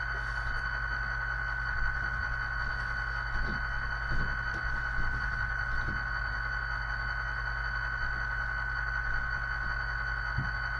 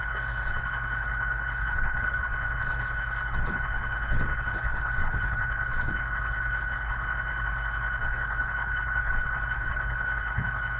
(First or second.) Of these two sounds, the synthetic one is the second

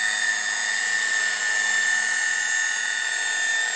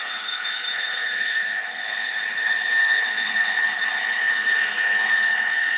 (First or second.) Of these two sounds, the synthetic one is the second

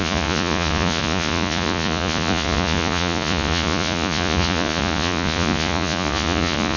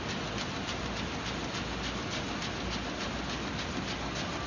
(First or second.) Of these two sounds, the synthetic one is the first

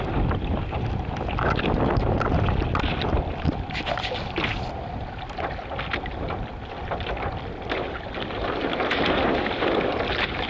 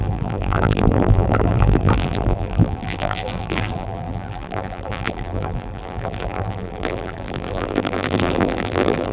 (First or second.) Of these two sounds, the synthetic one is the second